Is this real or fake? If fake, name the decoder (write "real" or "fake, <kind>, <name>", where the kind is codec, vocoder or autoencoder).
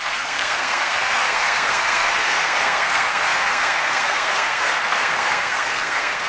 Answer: fake, codec, SNAC